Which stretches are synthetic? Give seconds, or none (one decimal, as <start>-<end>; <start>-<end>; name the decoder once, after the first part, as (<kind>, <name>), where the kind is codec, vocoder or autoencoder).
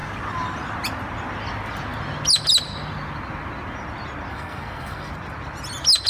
4.3-5.1 (codec, SNAC)